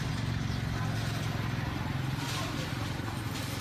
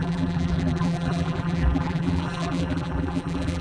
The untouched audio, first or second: first